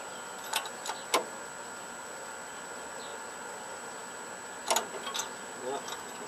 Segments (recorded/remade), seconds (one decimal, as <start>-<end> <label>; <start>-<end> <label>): 0.0-6.3 recorded